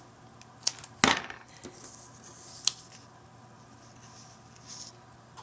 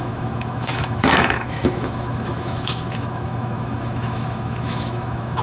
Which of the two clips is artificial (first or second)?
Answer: second